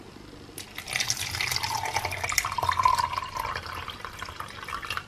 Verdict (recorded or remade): recorded